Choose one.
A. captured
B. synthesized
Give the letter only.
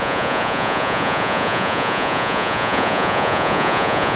B